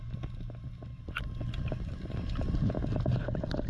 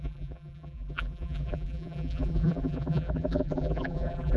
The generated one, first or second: second